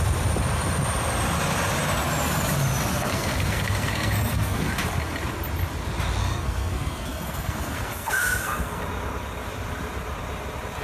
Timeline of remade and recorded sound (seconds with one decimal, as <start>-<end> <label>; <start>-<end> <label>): 0.0-2.9 recorded; 2.9-4.7 remade; 4.7-6.2 recorded; 6.2-8.8 remade; 8.8-10.8 recorded